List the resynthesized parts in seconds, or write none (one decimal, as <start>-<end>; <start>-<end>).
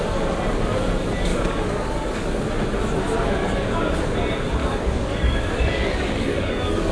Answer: 1.3-2.4; 3.4-4.0; 4.6-6.9